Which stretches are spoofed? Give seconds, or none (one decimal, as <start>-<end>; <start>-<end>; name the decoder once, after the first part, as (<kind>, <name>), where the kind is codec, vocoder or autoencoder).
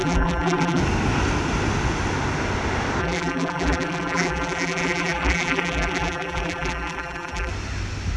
0.0-0.8 (vocoder, BigVGAN v2); 3.0-7.5